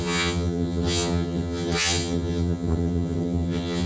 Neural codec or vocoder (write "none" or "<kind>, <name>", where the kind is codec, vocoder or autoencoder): vocoder, HiFi-GAN